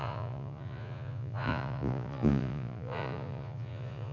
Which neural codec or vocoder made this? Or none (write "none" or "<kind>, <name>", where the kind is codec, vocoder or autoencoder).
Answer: vocoder, Vocos